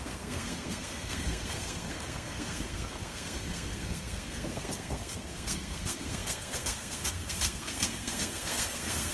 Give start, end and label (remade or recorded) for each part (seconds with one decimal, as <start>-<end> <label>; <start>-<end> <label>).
0.0-9.1 remade